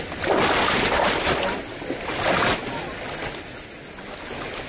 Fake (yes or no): no